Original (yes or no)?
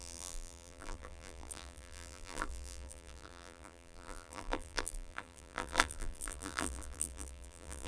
no